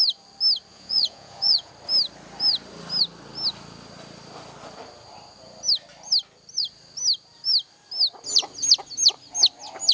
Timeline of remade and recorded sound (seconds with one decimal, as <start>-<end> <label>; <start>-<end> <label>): 0.0-0.7 recorded; 0.7-1.7 remade; 1.7-9.9 recorded